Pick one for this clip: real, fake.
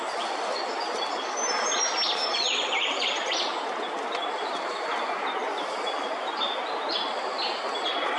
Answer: real